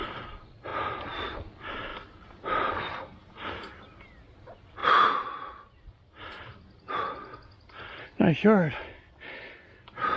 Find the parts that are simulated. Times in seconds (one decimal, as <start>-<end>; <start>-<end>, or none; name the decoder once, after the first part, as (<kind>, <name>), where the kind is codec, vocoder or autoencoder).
none